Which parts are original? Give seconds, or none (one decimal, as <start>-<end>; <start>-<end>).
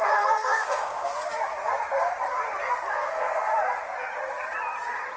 1.1-2.9; 3.5-5.2